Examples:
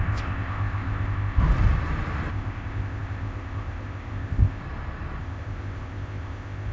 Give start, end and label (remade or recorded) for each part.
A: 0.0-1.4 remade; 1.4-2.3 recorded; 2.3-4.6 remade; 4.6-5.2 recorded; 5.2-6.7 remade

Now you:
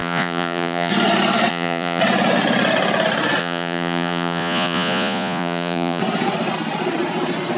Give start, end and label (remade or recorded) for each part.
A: 0.0-0.9 remade; 0.9-1.5 recorded; 1.5-2.0 remade; 2.0-3.4 recorded; 3.4-6.0 remade; 6.0-7.6 recorded

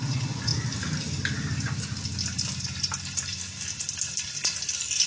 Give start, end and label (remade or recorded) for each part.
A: 0.0-5.1 recorded

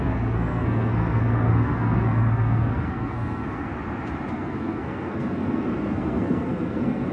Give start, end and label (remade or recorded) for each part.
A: 0.0-3.7 remade; 3.7-4.3 recorded; 4.3-7.1 remade

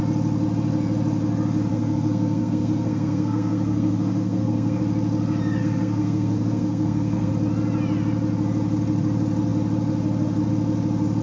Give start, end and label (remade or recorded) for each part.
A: 0.0-1.7 recorded; 1.7-4.8 remade; 4.8-5.6 recorded; 5.6-7.3 remade; 7.3-11.2 recorded

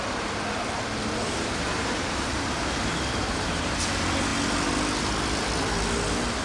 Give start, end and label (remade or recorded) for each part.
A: 0.0-1.0 recorded; 1.0-3.8 remade; 3.8-6.4 recorded

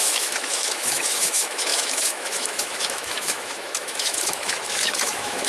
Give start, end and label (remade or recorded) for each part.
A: 0.0-5.5 remade

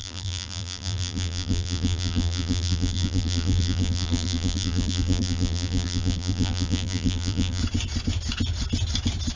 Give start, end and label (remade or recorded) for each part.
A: 0.0-7.6 remade; 7.6-9.4 recorded